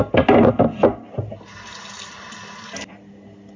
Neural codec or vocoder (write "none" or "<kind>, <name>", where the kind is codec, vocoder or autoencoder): none